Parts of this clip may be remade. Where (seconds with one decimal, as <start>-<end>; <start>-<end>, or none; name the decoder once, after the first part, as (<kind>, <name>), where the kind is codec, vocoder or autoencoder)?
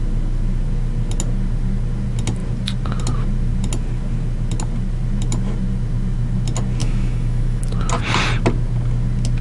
6.8-7.6 (autoencoder, DAC-VAE)